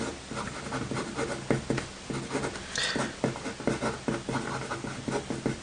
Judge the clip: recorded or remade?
recorded